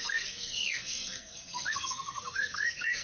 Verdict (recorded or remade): remade